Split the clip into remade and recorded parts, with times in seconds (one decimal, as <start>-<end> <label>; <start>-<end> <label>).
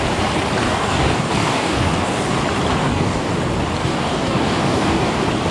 0.0-0.6 recorded; 0.6-2.3 remade; 2.3-2.8 recorded; 2.8-3.3 remade; 3.3-3.8 recorded; 3.8-5.1 remade; 5.1-5.5 recorded